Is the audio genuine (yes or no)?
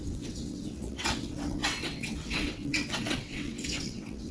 no